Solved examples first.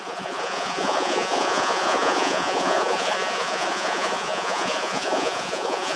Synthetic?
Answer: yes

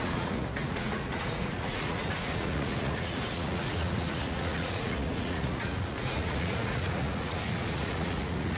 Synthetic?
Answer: yes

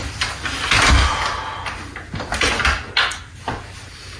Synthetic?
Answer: no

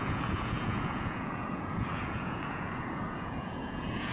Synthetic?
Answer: yes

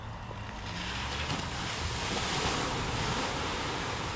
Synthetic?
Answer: no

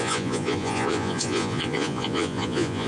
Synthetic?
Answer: yes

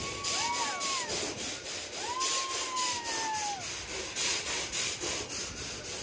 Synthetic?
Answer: no